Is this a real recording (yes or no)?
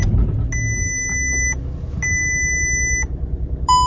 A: yes